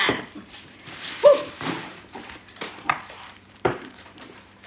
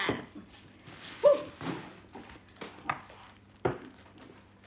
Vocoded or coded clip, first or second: first